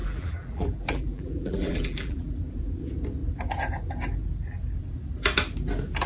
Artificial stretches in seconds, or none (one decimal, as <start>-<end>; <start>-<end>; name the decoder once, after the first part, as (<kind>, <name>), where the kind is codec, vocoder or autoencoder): 0.0-2.3 (vocoder, BigVGAN v2)